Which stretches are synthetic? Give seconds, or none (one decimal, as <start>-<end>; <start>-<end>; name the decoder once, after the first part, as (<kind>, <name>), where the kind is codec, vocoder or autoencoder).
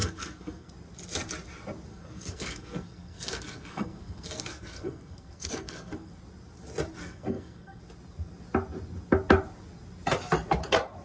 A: 0.0-0.7 (codec, SNAC); 1.9-6.1; 7.0-7.8